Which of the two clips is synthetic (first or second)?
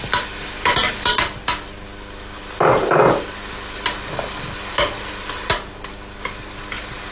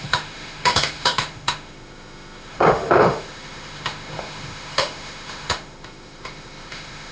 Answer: second